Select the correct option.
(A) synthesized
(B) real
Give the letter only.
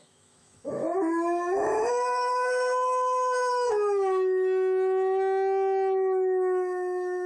A